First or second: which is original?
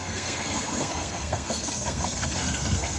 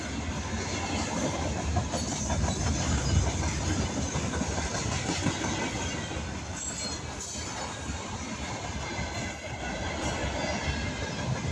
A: second